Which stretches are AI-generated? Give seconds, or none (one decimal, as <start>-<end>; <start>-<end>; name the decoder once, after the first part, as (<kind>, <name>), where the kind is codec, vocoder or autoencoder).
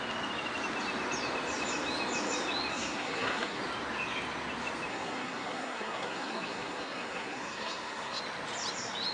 2.7-3.6 (codec, SNAC); 4.9-8.2